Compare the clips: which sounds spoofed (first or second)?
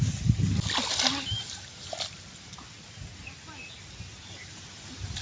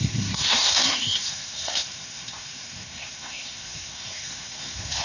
second